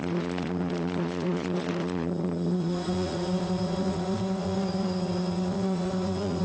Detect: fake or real fake